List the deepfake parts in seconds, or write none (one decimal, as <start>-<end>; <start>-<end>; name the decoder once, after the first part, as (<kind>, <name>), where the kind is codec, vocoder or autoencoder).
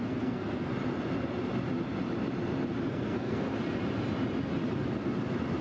0.0-0.7 (codec, SNAC); 2.9-3.5